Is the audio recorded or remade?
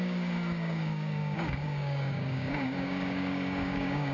remade